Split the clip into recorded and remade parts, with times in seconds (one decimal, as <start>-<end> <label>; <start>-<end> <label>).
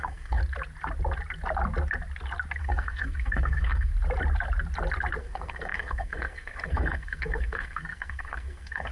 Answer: 0.0-0.4 remade; 0.4-2.6 recorded; 2.6-3.9 remade; 3.9-5.2 recorded; 5.2-8.9 remade